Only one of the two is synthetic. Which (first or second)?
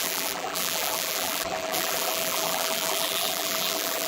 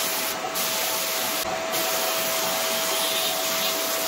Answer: first